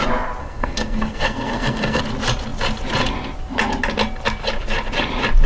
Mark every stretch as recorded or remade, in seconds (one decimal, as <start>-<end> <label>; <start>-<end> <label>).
0.0-0.4 recorded; 0.4-2.0 remade; 2.0-5.5 recorded